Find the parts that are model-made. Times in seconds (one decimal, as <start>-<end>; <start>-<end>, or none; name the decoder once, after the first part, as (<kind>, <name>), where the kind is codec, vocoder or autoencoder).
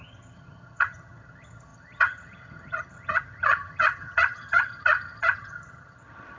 0.0-6.4 (vocoder, HiFi-GAN)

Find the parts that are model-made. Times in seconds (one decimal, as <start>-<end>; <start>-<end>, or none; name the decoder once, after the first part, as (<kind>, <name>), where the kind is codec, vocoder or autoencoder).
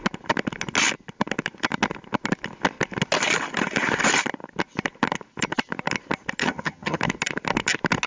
6.4-7.0 (vocoder, HiFi-GAN)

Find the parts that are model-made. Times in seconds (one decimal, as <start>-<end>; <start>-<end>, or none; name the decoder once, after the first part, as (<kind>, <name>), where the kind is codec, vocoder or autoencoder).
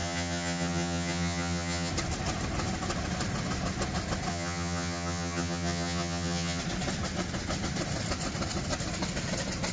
0.0-1.9 (vocoder, HiFi-GAN); 4.3-6.6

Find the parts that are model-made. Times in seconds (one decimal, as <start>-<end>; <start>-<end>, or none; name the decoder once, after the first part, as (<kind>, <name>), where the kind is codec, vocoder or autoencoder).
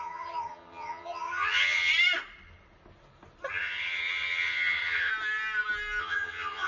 0.0-1.9 (vocoder, HiFi-GAN); 3.5-5.1; 6.0-6.7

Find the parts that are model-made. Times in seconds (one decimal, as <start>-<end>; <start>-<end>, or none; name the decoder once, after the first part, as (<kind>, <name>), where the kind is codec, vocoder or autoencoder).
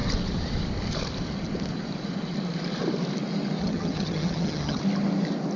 3.6-4.8 (vocoder, HiFi-GAN)